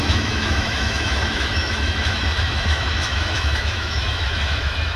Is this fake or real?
fake